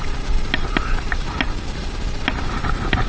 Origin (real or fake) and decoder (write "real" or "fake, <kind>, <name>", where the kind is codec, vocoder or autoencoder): real